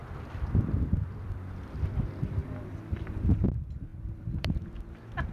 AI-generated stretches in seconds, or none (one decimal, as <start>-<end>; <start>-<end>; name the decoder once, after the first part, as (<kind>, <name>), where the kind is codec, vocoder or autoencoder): 0.0-1.8 (vocoder, BigVGAN v2); 3.9-4.6